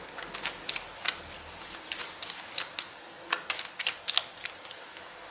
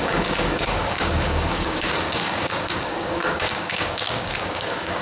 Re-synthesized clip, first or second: second